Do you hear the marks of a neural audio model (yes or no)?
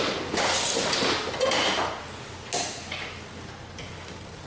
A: no